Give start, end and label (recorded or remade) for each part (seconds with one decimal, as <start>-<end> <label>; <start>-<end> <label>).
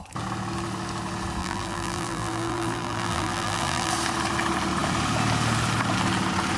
0.0-1.4 recorded; 1.4-3.9 remade; 3.9-6.6 recorded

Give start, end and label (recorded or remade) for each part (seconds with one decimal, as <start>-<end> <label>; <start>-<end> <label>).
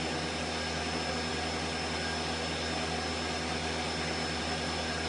0.0-5.1 recorded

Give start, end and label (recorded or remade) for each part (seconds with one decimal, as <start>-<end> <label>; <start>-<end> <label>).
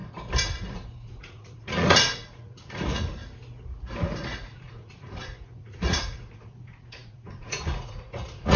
0.0-0.6 recorded; 0.6-3.2 remade; 3.2-4.0 recorded; 4.0-8.6 remade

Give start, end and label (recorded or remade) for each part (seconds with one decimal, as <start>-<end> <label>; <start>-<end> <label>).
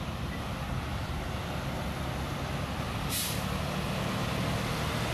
0.0-5.1 recorded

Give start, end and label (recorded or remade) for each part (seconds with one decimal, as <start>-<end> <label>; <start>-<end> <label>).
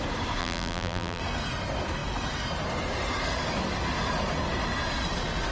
0.0-0.4 recorded; 0.4-1.2 remade; 1.2-5.5 recorded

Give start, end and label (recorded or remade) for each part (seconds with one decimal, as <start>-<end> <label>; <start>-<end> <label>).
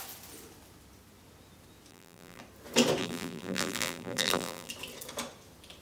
0.0-1.9 recorded; 1.9-2.4 remade; 2.4-3.0 recorded; 3.0-4.7 remade; 4.7-5.8 recorded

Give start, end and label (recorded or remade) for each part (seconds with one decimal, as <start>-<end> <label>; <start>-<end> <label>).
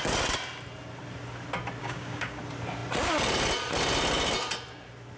0.0-1.8 recorded; 1.8-2.4 remade; 2.4-5.2 recorded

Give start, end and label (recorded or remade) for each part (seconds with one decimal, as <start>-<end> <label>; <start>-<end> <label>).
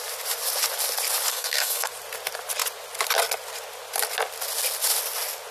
0.0-1.3 recorded; 1.3-1.9 remade; 1.9-5.5 recorded